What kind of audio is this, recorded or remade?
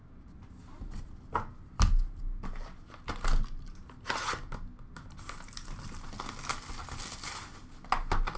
recorded